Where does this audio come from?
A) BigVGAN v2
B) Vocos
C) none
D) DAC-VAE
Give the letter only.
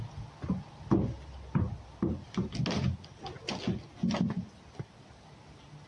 C